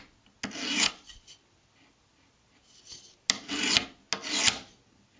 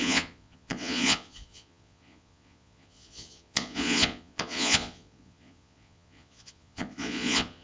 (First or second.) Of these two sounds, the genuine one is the first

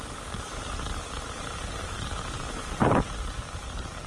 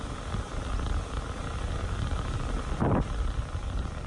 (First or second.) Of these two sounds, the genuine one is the second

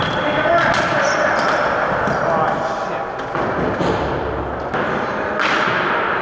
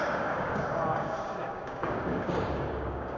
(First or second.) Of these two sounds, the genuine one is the first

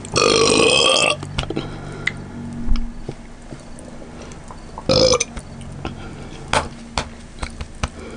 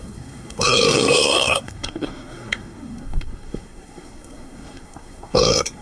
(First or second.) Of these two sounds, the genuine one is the first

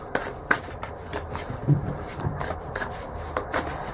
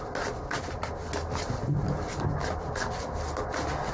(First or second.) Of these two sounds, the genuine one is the second